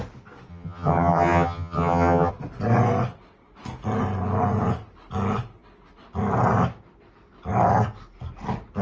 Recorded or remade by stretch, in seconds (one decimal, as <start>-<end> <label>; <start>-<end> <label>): 0.0-0.5 recorded; 0.5-2.3 remade; 2.3-8.8 recorded